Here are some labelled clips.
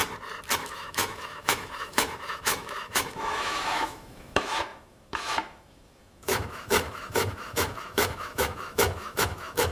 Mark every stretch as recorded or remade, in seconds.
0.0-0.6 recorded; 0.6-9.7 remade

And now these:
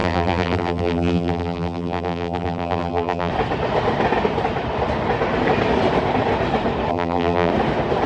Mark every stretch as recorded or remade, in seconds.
0.0-3.3 remade; 3.3-6.9 recorded; 6.9-7.5 remade; 7.5-8.1 recorded

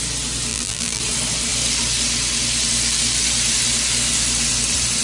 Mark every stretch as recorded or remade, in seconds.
0.0-0.5 recorded; 0.5-1.0 remade; 1.0-5.0 recorded

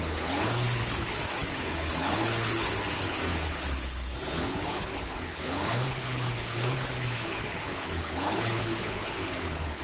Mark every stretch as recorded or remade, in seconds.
0.0-9.8 remade

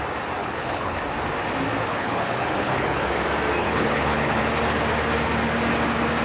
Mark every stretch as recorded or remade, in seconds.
0.0-0.4 recorded; 0.4-1.0 remade; 1.0-1.9 recorded; 1.9-3.1 remade; 3.1-3.6 recorded; 3.6-4.4 remade; 4.4-6.2 recorded

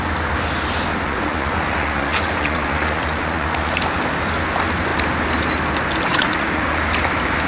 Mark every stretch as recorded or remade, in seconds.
0.0-0.9 recorded; 0.9-3.7 remade; 3.7-6.1 recorded; 6.1-6.8 remade; 6.8-7.5 recorded

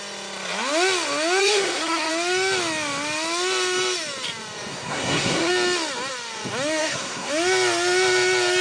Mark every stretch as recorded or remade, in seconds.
0.0-1.4 recorded; 1.4-2.1 remade; 2.1-4.7 recorded; 4.7-5.5 remade; 5.5-6.8 recorded; 6.8-7.3 remade; 7.3-8.6 recorded